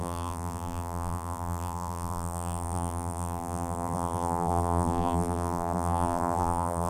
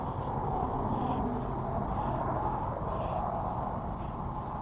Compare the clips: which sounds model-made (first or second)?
first